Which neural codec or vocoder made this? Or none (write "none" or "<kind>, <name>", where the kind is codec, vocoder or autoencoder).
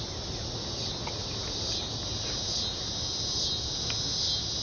none